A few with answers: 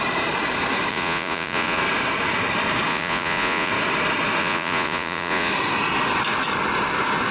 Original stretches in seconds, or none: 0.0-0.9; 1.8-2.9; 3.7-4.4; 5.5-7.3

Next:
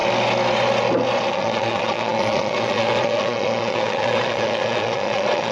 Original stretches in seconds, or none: 0.0-1.3

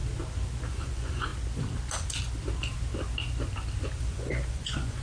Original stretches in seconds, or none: 0.0-0.7; 1.3-4.0

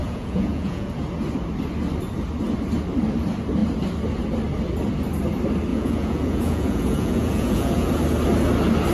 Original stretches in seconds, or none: 0.9-5.7; 7.9-8.9